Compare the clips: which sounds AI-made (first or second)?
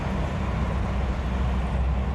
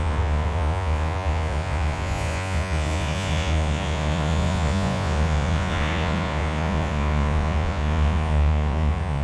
second